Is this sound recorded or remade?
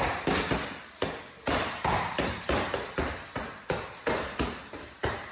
recorded